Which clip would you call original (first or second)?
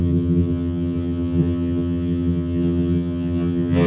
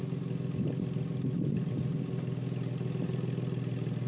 second